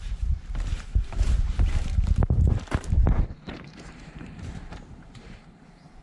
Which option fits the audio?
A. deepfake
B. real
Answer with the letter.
A